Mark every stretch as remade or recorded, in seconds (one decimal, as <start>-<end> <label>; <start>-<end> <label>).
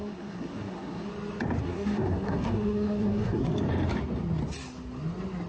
0.0-1.1 remade; 1.1-1.6 recorded; 1.6-3.5 remade; 3.5-5.5 recorded